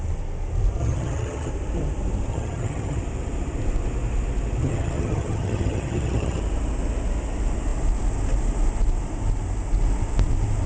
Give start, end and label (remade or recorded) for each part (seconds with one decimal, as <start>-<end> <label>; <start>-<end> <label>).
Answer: 0.0-0.8 recorded; 0.8-1.5 remade; 1.5-2.3 recorded; 2.3-3.0 remade; 3.0-4.6 recorded; 4.6-6.4 remade; 6.4-10.7 recorded